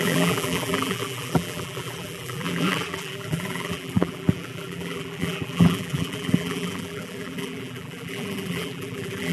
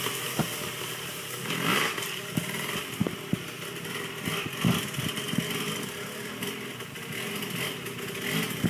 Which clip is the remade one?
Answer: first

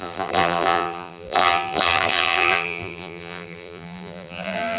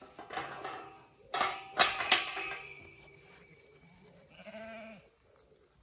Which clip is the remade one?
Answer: first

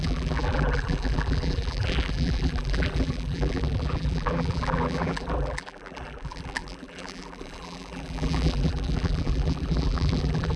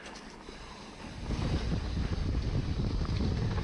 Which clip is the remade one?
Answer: first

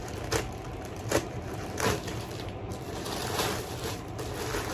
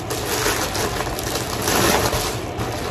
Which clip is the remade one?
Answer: first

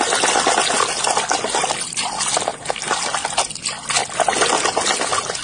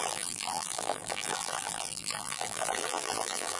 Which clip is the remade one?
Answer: second